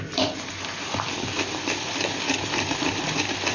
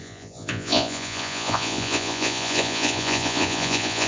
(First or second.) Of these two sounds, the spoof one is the second